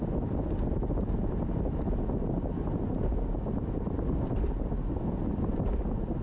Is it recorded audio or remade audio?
recorded